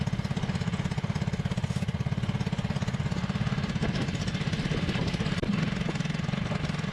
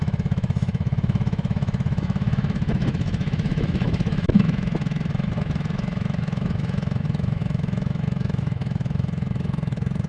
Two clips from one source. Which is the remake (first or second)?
second